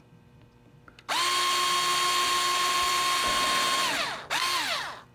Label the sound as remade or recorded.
recorded